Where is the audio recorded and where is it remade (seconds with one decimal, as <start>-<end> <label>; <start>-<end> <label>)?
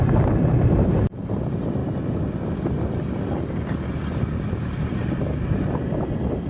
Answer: 0.0-6.5 remade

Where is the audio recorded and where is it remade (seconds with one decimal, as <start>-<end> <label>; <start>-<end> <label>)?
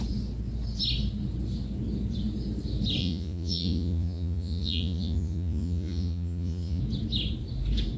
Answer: 0.0-3.0 recorded; 3.0-6.8 remade; 6.8-8.0 recorded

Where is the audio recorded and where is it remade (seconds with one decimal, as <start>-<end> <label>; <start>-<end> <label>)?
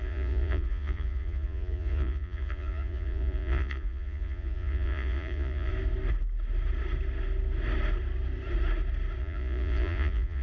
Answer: 0.0-5.7 remade; 5.7-9.2 recorded; 9.2-10.4 remade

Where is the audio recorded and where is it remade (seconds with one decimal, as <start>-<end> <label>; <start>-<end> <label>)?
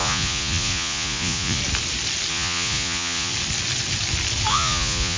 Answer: 0.0-1.6 remade; 1.6-2.3 recorded; 2.3-3.3 remade; 3.3-4.5 recorded; 4.5-5.2 remade